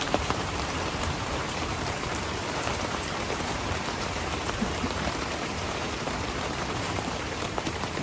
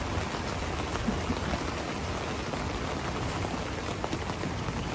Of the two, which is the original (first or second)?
second